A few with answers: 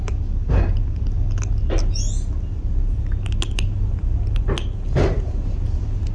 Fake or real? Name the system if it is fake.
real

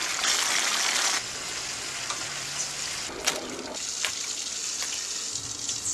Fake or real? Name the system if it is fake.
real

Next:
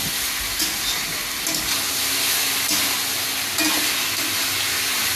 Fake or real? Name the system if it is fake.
real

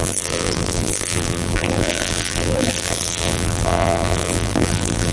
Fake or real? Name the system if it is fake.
fake, vocoder, BigVGAN v2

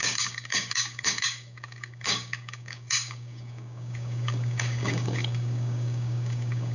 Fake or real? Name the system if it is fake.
fake, codec, DAC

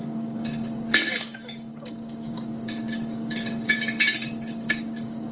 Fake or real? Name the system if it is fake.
fake, codec, DAC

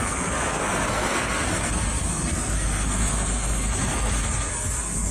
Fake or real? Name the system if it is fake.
fake, codec, SNAC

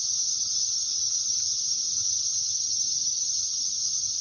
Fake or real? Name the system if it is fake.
fake, vocoder, HiFi-GAN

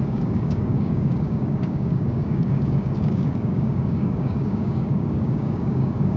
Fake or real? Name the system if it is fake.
fake, codec, DAC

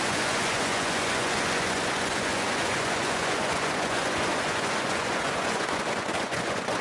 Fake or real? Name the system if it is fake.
fake, vocoder, Vocos